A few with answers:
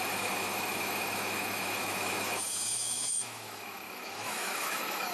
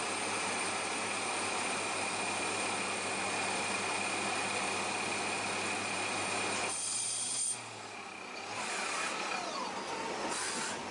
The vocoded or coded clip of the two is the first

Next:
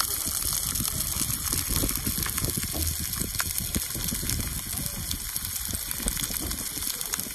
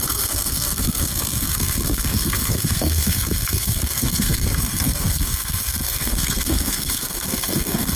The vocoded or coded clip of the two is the second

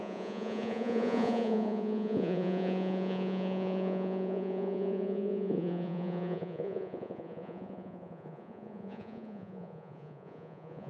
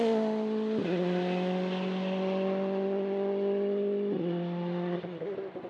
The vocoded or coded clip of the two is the first